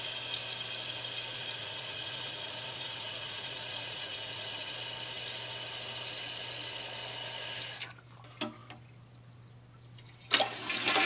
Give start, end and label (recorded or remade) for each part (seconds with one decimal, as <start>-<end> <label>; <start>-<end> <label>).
0.0-1.3 recorded; 1.3-4.7 remade; 4.7-11.1 recorded